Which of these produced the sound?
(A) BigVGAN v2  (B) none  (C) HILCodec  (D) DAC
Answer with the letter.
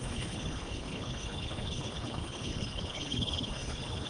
C